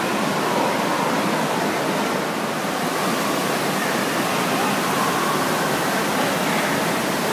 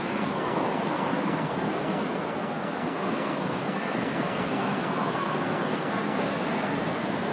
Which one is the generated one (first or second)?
second